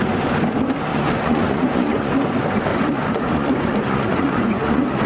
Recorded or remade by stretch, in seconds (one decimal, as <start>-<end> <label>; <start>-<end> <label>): 0.0-0.9 recorded; 0.9-2.1 remade; 2.1-2.7 recorded; 2.7-5.1 remade